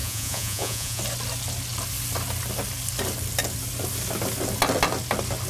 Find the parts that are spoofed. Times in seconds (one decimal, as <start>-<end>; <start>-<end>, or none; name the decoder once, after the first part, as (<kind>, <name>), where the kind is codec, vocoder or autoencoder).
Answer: 0.0-1.0 (vocoder, Vocos)